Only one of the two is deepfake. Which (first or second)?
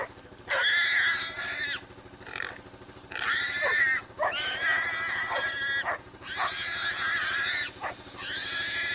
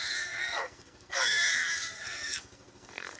second